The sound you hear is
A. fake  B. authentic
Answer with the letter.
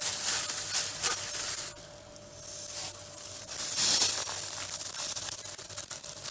B